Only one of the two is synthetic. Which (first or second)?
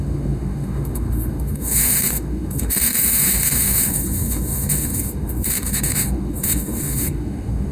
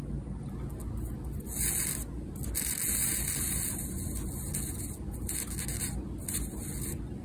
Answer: first